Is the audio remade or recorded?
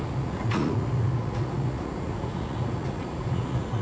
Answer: remade